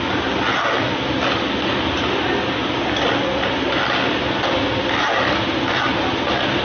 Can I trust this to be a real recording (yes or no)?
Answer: yes